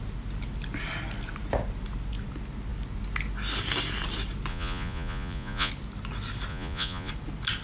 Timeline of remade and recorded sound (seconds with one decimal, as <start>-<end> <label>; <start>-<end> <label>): 0.0-4.5 recorded; 4.5-5.7 remade; 5.7-6.5 recorded; 6.5-7.1 remade; 7.1-7.6 recorded